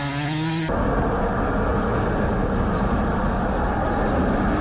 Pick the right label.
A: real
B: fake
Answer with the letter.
A